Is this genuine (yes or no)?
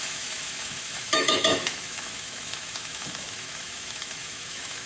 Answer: no